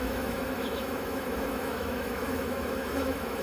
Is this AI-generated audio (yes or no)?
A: yes